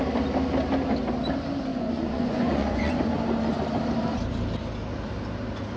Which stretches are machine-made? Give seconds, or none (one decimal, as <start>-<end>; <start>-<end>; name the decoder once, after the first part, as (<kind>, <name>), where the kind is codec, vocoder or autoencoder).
1.7-3.1 (vocoder, Vocos)

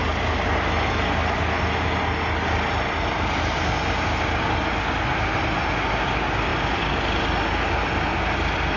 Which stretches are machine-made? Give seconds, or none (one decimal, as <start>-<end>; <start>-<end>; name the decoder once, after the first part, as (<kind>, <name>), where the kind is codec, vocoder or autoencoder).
none

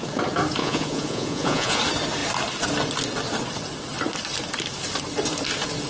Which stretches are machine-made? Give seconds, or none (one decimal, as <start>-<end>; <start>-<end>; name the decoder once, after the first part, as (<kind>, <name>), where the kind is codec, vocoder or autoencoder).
0.6-1.8 (vocoder, Vocos)

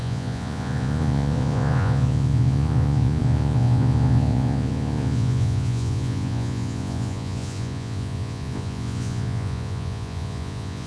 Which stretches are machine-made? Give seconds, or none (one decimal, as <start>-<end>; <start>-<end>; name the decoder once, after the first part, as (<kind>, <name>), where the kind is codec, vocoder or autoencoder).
0.0-10.9 (vocoder, Vocos)

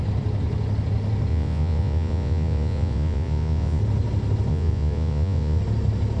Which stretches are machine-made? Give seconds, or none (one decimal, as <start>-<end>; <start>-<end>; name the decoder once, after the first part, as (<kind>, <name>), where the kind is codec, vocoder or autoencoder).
1.3-3.8 (vocoder, Vocos); 4.5-5.6